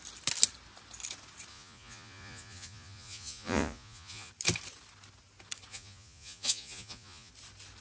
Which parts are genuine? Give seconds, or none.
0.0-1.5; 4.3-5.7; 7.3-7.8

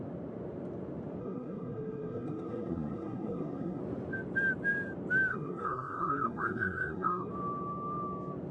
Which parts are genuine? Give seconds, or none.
0.0-1.2; 3.8-5.3; 7.3-8.5

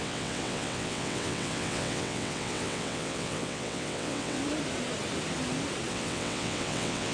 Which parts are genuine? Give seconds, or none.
4.4-5.9

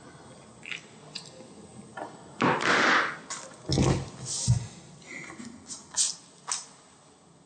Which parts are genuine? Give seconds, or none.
0.0-7.5

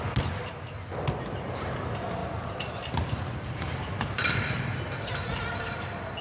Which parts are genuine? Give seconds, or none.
0.0-2.2; 5.5-6.2

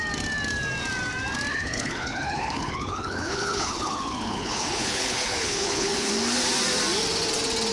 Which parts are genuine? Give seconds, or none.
0.0-1.5; 6.1-7.7

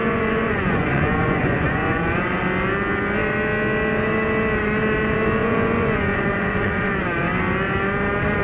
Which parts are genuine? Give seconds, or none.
2.4-5.4; 6.9-8.4